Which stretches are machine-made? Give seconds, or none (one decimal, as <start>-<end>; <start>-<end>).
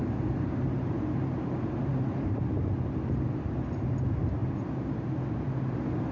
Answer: 0.0-1.9